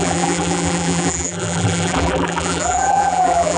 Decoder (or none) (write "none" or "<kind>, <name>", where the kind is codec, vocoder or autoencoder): vocoder, BigVGAN v2